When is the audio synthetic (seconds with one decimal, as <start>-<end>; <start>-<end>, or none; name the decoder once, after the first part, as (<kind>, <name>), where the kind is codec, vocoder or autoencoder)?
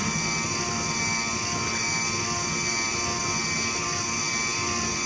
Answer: none